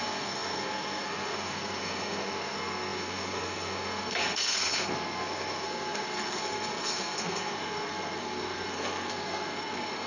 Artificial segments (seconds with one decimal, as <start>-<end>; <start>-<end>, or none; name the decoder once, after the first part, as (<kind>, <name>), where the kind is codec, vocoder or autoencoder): 0.0-10.1 (codec, SNAC)